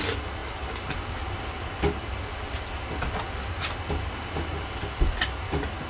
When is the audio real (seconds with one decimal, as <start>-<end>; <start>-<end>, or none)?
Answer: 0.0-5.9